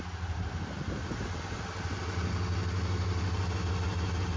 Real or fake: real